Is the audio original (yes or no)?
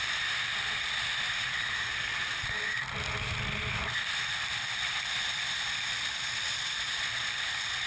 yes